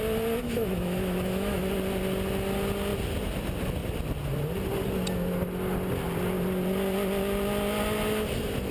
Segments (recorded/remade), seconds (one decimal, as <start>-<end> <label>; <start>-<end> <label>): 0.0-0.4 recorded; 0.4-1.7 remade; 1.7-8.7 recorded